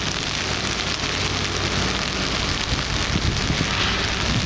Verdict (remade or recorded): recorded